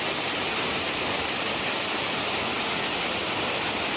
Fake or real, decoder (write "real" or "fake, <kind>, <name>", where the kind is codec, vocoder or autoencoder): real